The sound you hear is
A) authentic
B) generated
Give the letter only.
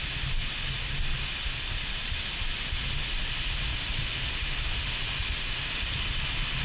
A